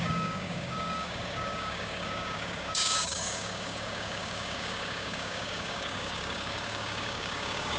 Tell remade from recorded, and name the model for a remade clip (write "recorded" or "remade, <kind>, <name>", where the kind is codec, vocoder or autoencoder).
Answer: remade, codec, DAC